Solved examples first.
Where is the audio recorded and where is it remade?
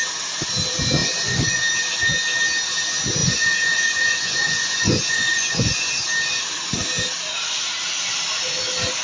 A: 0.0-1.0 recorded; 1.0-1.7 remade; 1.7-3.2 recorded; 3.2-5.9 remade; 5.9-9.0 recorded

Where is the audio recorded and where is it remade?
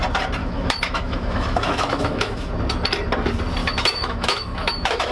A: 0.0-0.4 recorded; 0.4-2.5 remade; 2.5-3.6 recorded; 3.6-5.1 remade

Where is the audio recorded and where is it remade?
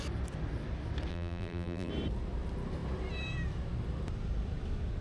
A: 0.0-1.1 recorded; 1.1-1.9 remade; 1.9-5.0 recorded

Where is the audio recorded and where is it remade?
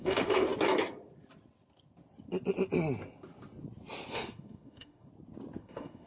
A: 0.0-0.5 remade; 0.5-4.1 recorded; 4.1-5.1 remade; 5.1-5.6 recorded; 5.6-6.1 remade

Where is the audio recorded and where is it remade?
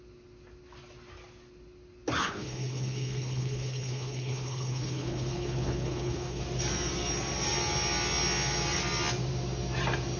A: 0.0-2.2 recorded; 2.2-6.4 remade; 6.4-10.2 recorded